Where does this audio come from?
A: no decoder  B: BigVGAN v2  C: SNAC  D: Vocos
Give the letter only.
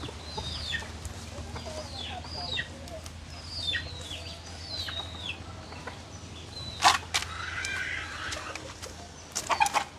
A